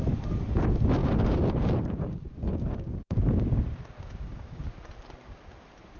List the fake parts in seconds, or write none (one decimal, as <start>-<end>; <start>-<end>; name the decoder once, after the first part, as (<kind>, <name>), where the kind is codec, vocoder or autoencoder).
1.0-4.6 (codec, DAC)